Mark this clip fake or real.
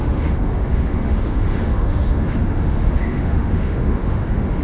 fake